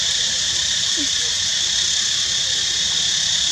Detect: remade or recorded recorded